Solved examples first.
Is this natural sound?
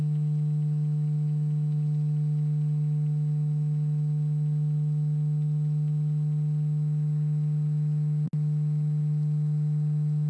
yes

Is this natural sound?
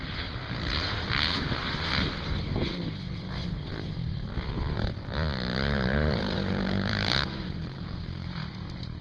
no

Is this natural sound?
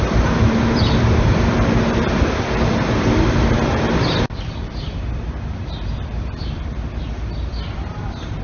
no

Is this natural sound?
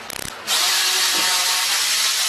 yes